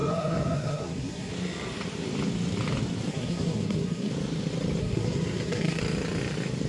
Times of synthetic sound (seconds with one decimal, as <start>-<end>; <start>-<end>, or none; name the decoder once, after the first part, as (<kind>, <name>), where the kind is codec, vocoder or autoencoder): 0.0-1.3 (codec, SNAC); 3.1-4.1; 4.8-5.8